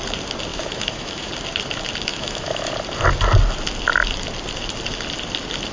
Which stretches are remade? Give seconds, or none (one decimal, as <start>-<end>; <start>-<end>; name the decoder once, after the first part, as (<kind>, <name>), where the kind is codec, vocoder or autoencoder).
0.5-1.3 (autoencoder, DAC-VAE); 2.1-2.7